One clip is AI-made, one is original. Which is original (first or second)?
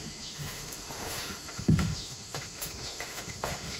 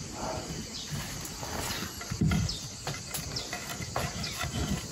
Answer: second